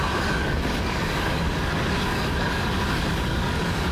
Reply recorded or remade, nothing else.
remade